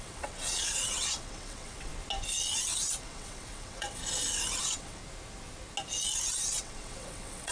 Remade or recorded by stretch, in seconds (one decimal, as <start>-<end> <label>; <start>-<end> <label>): 0.0-1.9 remade; 1.9-3.0 recorded; 3.0-4.0 remade; 4.0-4.6 recorded; 4.6-5.0 remade; 5.0-6.6 recorded; 6.6-7.5 remade

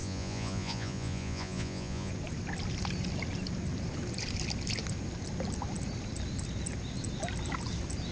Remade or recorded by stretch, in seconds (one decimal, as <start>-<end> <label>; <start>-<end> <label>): 0.0-2.1 remade; 2.1-8.1 recorded

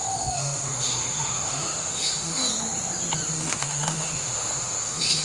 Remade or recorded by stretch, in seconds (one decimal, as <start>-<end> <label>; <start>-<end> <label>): 0.0-2.5 remade; 2.5-3.3 recorded; 3.3-5.2 remade

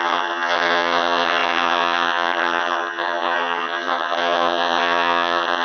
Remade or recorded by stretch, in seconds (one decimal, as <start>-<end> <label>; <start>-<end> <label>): 0.0-5.6 remade

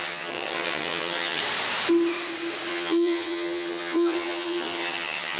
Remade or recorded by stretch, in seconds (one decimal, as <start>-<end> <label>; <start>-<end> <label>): 0.0-1.4 remade; 1.4-2.7 recorded; 2.7-5.4 remade

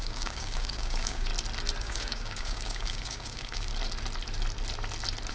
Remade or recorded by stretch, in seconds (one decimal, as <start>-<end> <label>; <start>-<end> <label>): 0.0-1.3 remade; 1.3-1.8 recorded; 1.8-3.7 remade; 3.7-5.3 recorded

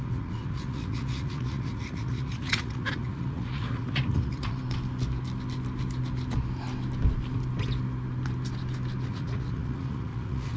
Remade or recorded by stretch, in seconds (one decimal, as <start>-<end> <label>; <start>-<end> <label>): 0.0-4.6 remade; 4.6-9.1 recorded; 9.1-10.6 remade

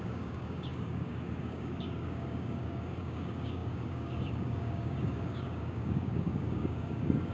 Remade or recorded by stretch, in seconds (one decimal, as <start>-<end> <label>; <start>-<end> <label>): 0.0-7.3 remade